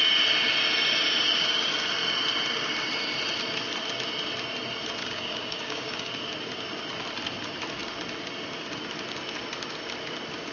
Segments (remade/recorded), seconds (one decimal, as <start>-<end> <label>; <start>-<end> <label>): 0.0-5.0 recorded; 5.0-6.1 remade; 6.1-10.5 recorded